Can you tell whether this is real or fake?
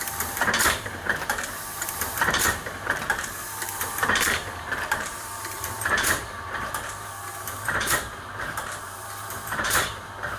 fake